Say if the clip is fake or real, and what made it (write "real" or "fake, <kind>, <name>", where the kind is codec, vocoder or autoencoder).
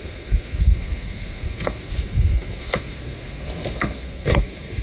fake, codec, SNAC